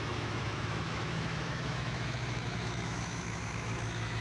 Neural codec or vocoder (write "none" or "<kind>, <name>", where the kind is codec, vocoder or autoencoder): autoencoder, DAC-VAE